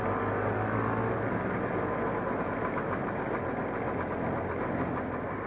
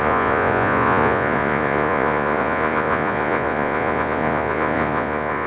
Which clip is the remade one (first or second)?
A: second